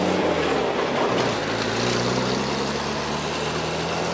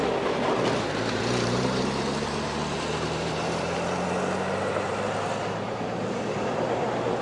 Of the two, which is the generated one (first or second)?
second